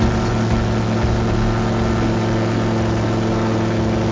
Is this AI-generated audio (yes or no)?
no